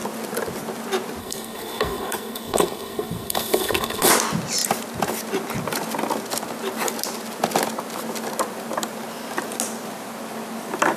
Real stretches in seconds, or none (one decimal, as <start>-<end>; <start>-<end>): 0.0-1.2; 4.1-11.0